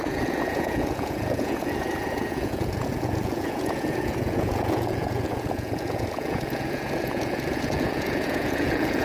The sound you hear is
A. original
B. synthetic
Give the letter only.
B